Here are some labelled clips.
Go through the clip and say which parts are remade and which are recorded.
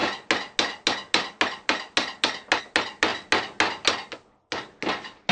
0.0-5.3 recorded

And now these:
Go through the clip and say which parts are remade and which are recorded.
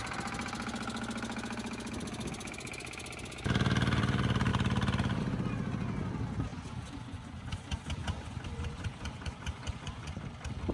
0.0-6.5 recorded; 6.5-10.2 remade; 10.2-10.7 recorded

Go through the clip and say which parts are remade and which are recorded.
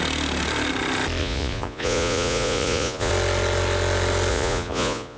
0.0-1.2 recorded; 1.2-3.1 remade; 3.1-4.3 recorded; 4.3-5.2 remade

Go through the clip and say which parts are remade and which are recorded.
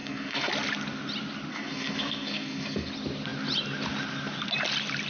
0.0-0.5 remade; 0.5-1.5 recorded; 1.5-2.9 remade; 2.9-5.1 recorded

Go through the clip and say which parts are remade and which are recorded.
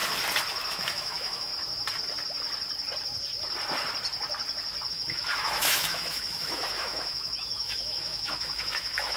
0.0-0.7 recorded; 0.7-1.5 remade; 1.5-4.9 recorded; 4.9-9.2 remade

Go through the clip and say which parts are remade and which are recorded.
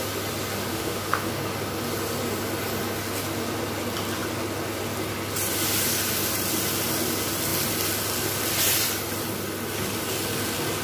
0.0-0.7 recorded; 0.7-1.3 remade; 1.3-10.8 recorded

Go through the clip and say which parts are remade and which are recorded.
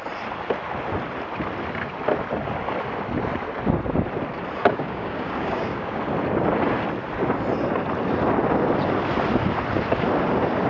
0.0-4.6 recorded; 4.6-6.0 remade; 6.0-10.7 recorded